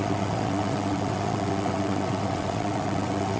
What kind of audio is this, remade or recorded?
remade